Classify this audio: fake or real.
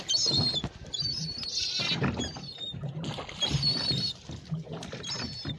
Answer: real